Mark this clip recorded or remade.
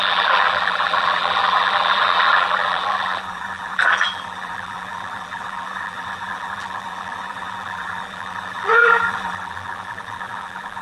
remade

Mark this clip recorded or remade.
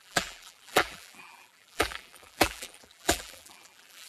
remade